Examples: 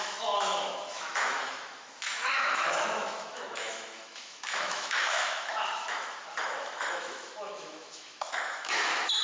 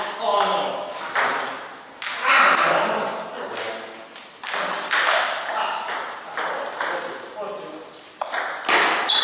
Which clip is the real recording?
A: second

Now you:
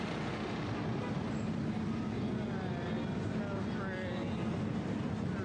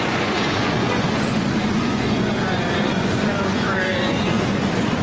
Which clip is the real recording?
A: first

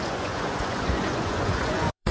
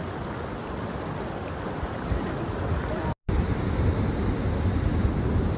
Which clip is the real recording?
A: second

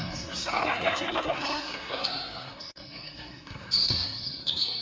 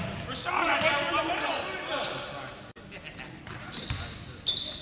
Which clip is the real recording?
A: second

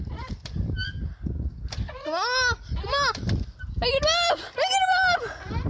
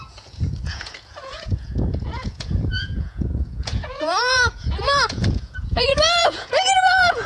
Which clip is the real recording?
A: first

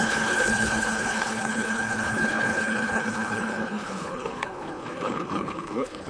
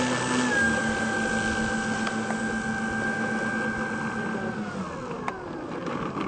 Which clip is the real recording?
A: second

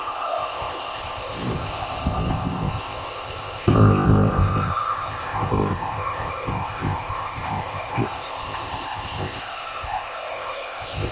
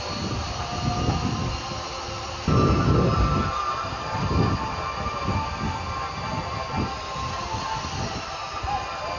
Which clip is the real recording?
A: second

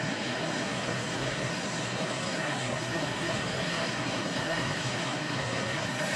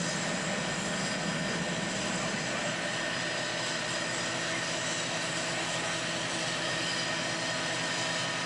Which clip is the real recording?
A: second